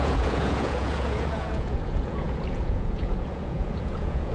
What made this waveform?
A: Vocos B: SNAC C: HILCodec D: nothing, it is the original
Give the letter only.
A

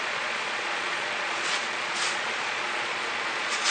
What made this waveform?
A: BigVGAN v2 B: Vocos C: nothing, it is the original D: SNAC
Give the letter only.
B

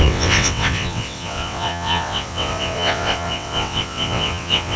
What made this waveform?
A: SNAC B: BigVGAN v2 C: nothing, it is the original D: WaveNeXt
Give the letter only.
D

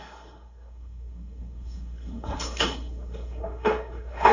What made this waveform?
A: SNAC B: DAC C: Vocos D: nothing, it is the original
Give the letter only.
A